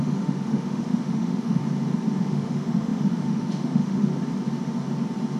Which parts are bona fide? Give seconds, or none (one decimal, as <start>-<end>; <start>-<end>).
1.6-2.2; 4.1-5.4